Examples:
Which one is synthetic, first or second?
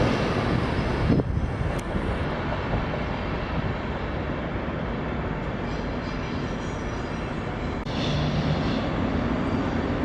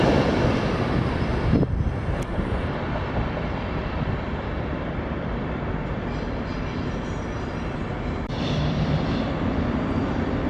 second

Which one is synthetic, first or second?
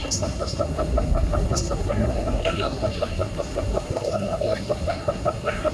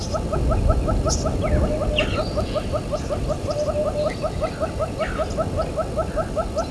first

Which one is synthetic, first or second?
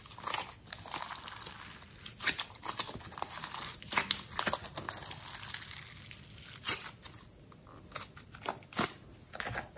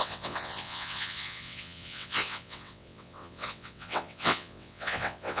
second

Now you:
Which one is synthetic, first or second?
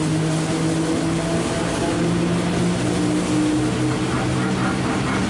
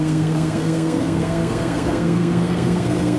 second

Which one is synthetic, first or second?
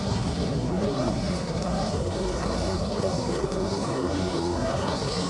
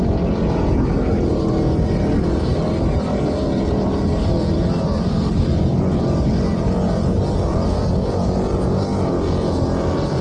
first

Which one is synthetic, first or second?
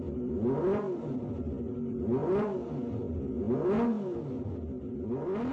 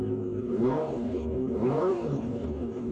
second